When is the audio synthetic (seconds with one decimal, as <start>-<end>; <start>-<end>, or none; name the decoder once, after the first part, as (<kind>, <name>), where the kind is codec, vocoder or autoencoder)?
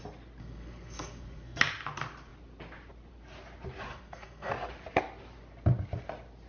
0.4-1.6 (codec, SNAC); 3.9-4.5